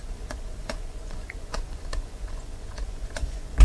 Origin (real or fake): fake